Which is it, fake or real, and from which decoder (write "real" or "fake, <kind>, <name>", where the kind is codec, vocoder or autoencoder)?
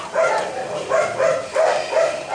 real